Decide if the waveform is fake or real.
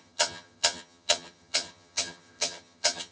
fake